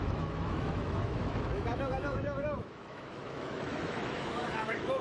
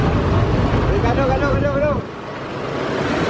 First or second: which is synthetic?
first